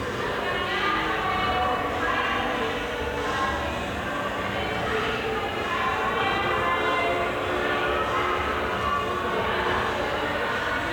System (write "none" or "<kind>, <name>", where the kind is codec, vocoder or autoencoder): none